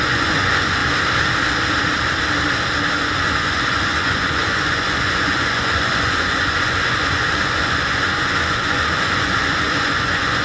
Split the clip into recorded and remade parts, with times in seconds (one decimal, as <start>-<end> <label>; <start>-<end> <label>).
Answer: 0.0-0.8 remade; 0.8-2.9 recorded; 2.9-10.4 remade